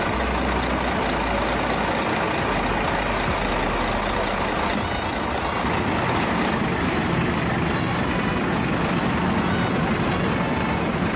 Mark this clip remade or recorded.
recorded